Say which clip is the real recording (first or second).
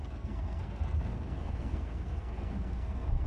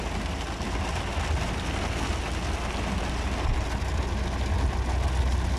second